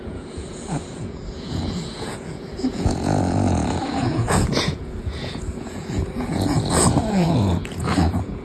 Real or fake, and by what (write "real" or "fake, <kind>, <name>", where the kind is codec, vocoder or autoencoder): fake, vocoder, Vocos